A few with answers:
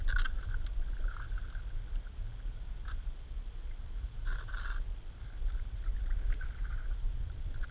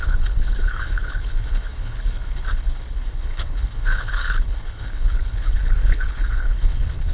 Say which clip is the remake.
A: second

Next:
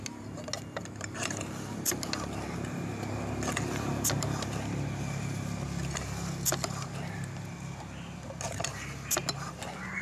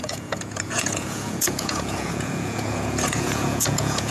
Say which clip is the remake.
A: second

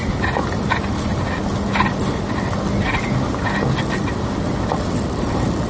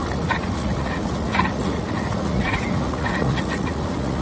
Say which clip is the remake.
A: second